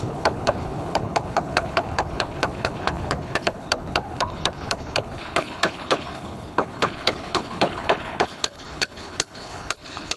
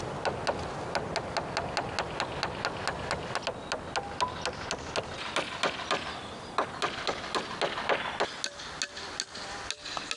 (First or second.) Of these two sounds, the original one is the second